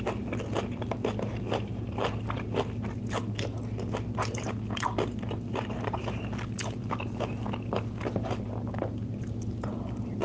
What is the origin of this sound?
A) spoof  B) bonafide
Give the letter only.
B